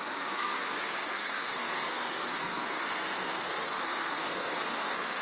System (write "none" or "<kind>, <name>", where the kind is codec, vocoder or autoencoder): codec, SNAC